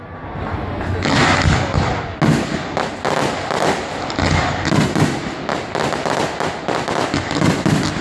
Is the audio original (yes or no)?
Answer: yes